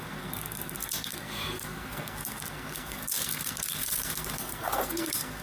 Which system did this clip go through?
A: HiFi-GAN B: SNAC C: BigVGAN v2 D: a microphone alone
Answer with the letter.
B